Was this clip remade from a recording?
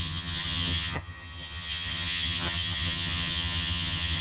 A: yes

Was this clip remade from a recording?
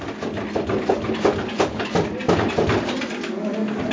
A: no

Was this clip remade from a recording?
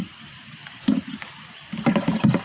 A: no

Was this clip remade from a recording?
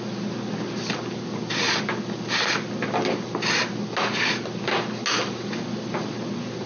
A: no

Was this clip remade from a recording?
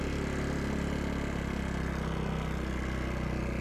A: no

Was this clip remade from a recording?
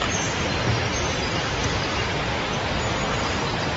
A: no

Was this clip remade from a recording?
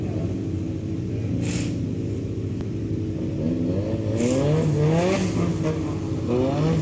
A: no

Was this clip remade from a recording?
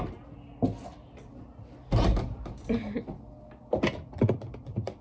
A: no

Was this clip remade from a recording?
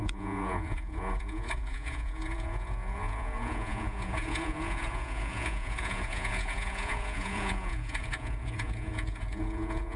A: yes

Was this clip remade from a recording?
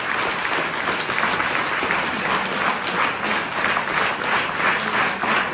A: no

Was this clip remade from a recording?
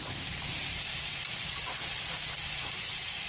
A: yes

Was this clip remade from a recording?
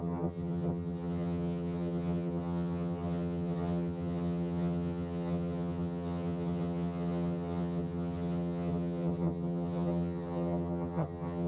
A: yes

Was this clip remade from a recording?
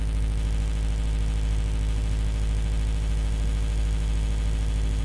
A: no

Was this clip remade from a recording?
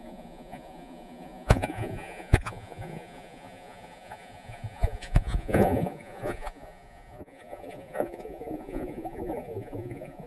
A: yes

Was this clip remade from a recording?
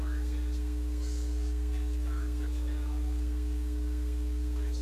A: yes